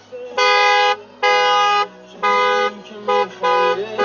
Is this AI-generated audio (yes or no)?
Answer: no